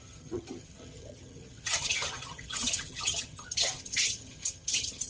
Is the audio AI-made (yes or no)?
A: yes